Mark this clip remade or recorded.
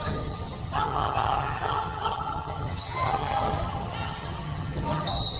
remade